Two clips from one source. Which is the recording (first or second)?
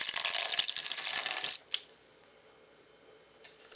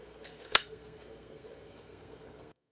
first